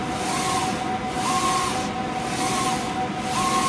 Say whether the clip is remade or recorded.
recorded